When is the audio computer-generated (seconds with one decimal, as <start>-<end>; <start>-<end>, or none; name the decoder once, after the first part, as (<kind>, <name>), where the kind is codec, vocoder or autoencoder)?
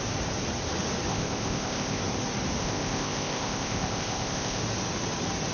1.1-2.0 (codec, ZipCodec); 2.6-4.6